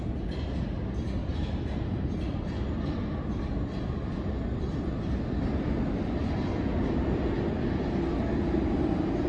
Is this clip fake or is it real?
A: real